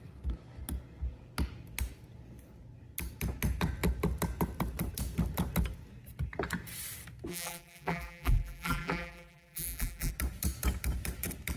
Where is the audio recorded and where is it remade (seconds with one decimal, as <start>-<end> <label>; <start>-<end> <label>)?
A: 0.0-7.3 recorded; 7.3-10.1 remade; 10.1-11.6 recorded